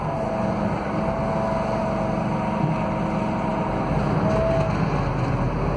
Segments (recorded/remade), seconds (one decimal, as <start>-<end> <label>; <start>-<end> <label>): 0.0-5.8 recorded

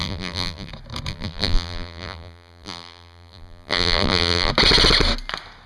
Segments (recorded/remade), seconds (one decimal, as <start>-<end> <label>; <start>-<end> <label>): 0.0-0.7 remade; 0.7-1.1 recorded; 1.1-4.5 remade; 4.5-5.7 recorded

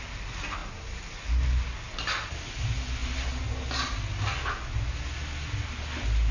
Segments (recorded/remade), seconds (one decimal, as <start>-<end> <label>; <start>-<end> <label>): 0.0-6.3 recorded

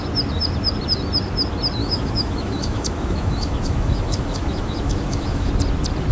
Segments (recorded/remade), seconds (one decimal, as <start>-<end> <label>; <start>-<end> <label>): 0.0-1.8 recorded; 1.8-5.5 remade; 5.5-6.1 recorded